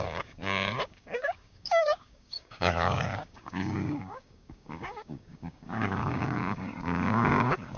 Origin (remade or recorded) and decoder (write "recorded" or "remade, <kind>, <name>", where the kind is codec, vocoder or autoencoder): remade, codec, DAC